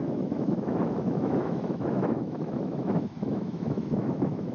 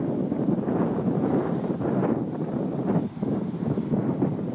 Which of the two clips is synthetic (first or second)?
first